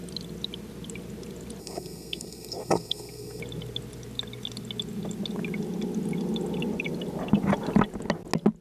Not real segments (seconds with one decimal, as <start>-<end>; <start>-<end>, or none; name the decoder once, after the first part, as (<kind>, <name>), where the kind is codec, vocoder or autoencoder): 1.6-3.4 (codec, SNAC)